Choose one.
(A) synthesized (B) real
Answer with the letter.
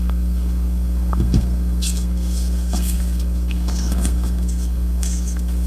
A